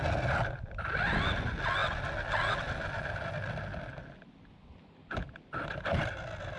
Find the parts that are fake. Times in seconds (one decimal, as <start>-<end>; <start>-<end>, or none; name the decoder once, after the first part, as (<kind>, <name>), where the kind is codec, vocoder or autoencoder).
none